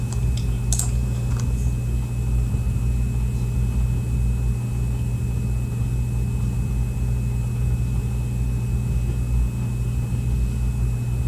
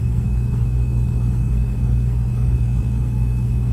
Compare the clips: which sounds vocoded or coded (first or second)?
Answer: second